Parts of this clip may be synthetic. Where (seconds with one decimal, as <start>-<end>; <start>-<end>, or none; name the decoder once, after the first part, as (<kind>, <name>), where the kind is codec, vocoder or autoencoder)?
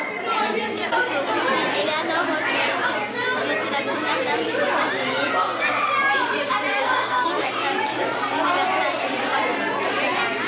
6.7-7.5 (codec, SNAC)